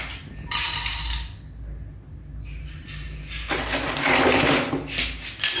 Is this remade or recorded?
recorded